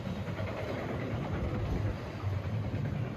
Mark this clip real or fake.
real